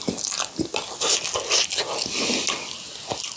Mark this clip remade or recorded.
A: recorded